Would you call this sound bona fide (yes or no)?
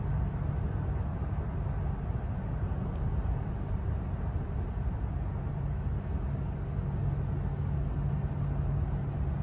yes